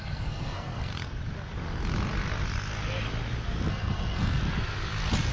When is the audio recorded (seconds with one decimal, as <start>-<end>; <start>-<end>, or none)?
0.9-3.7; 4.4-5.3